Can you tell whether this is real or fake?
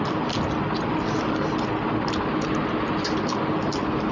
real